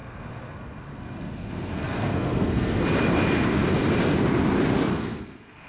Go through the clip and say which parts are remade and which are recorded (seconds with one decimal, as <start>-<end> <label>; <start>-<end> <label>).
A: 0.0-2.8 remade; 2.8-4.9 recorded; 4.9-5.7 remade